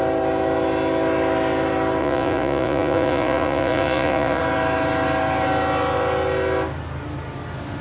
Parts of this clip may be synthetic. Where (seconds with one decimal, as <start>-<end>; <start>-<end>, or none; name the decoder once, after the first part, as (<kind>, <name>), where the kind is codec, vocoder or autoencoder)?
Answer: 2.0-4.4 (vocoder, Vocos)